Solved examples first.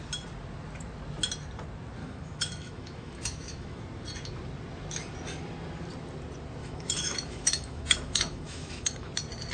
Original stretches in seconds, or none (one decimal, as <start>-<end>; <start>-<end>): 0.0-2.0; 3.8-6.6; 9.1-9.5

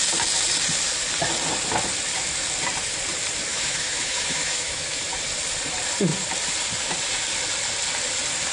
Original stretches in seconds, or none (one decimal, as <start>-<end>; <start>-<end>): 0.0-3.5; 5.0-8.5

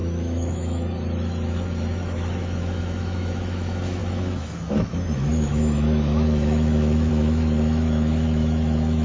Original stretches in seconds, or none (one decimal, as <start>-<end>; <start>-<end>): none